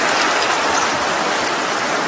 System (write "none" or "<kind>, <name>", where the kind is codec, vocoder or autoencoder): none